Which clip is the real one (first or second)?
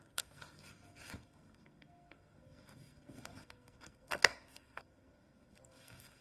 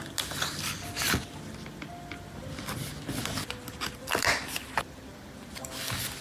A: second